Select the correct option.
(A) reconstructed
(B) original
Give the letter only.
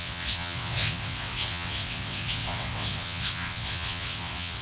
A